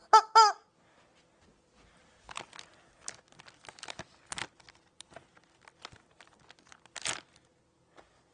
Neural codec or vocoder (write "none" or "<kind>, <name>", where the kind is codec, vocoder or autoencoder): none